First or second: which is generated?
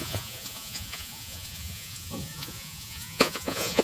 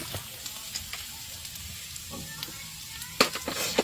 first